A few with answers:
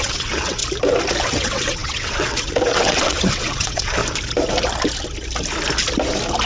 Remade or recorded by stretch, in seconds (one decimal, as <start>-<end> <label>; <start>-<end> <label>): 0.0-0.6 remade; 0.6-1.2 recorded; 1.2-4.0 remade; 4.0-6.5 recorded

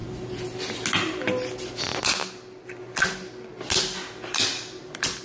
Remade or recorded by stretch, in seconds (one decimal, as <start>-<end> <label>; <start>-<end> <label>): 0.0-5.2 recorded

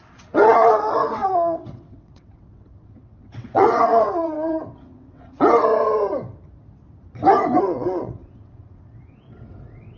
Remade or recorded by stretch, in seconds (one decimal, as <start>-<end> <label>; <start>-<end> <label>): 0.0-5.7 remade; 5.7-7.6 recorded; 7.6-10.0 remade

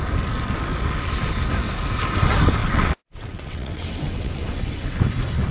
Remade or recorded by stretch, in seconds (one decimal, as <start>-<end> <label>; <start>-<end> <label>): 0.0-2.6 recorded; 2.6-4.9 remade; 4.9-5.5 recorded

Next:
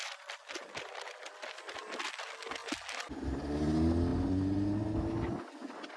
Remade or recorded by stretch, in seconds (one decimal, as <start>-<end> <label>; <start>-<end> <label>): 0.0-6.0 recorded

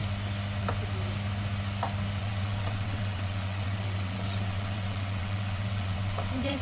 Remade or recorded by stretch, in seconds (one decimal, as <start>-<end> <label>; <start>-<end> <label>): 0.0-2.2 recorded; 2.2-6.6 remade

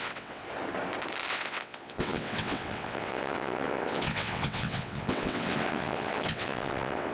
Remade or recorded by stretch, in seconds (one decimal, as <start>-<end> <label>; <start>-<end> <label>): 0.0-0.4 remade; 0.4-1.3 recorded; 1.3-7.1 remade